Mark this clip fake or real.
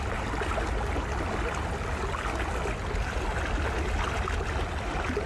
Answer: real